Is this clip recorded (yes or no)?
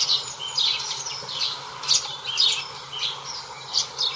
yes